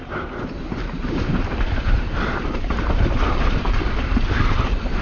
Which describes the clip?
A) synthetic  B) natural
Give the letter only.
A